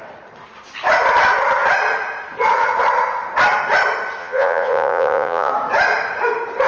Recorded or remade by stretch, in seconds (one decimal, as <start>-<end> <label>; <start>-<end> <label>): 0.0-4.2 recorded; 4.2-5.5 remade; 5.5-6.7 recorded